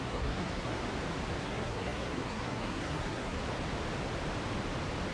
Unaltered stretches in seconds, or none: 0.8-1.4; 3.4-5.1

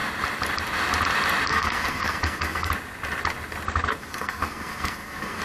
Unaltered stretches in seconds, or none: 0.0-1.5; 2.7-4.0